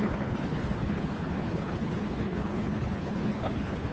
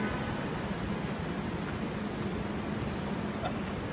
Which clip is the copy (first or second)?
first